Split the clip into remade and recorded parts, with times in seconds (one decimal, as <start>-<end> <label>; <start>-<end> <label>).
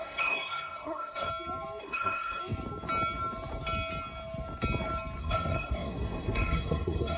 0.0-1.3 remade; 1.3-1.8 recorded; 1.8-2.4 remade; 2.4-5.2 recorded; 5.2-7.2 remade